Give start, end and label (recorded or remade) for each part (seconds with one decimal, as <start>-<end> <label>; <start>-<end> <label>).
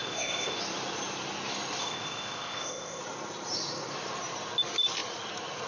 0.0-0.6 remade; 0.6-1.8 recorded; 1.8-3.0 remade; 3.0-5.7 recorded